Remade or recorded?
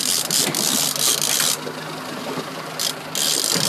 recorded